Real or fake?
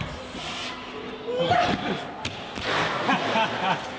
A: real